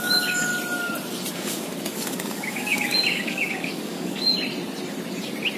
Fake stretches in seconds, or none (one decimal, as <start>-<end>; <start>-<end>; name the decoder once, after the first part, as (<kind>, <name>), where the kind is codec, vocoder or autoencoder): 0.0-0.5 (codec, DAC); 1.3-4.3